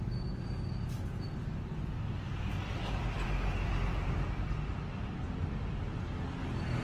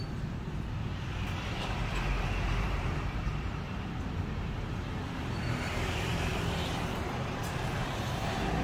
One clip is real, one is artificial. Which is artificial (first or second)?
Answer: second